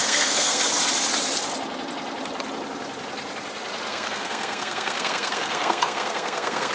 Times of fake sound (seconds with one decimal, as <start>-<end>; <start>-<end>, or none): 0.0-0.6; 3.9-6.7